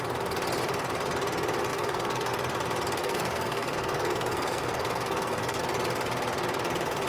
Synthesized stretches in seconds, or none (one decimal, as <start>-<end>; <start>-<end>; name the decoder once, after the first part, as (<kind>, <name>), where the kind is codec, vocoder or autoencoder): 1.7-2.3 (codec, SNAC); 3.0-5.6